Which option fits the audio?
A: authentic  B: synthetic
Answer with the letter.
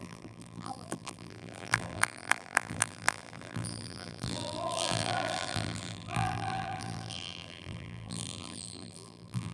B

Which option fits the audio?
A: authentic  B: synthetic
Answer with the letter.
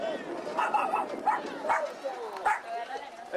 A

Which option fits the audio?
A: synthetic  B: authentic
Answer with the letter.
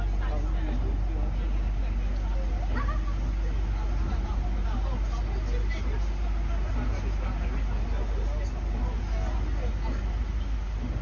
B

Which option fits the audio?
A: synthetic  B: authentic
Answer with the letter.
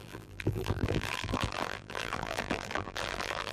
A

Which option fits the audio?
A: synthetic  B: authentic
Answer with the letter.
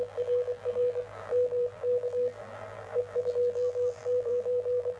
A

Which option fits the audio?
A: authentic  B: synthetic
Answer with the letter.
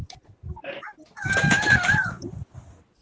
A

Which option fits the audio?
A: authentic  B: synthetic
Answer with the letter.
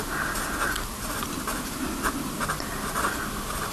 A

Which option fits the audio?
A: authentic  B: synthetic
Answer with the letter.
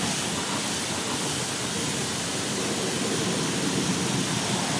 A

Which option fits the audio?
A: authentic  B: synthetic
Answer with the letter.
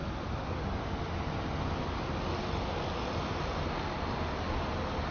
A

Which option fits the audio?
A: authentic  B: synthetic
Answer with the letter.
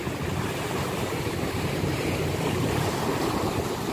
B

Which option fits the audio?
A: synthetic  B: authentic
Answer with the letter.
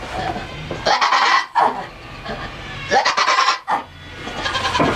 B